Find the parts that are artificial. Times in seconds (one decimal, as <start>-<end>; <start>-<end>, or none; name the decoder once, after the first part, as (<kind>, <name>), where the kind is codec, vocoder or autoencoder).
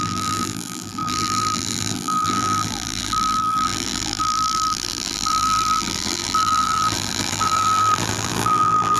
0.0-9.0 (vocoder, BigVGAN v2)